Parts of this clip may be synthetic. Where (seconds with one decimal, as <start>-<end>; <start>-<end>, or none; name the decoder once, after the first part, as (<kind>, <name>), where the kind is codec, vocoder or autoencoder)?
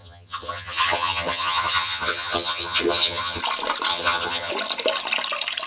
0.0-3.4 (vocoder, HiFi-GAN); 3.9-4.5